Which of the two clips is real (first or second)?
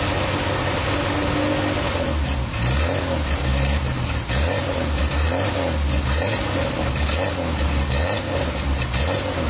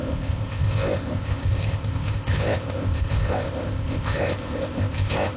first